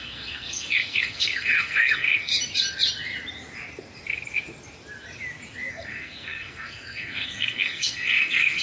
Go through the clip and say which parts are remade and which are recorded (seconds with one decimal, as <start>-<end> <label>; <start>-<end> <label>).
0.0-2.3 remade; 2.3-5.7 recorded; 5.7-8.6 remade